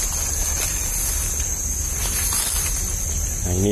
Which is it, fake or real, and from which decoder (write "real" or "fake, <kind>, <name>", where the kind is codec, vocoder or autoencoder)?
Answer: real